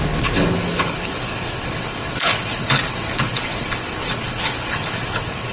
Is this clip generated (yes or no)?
yes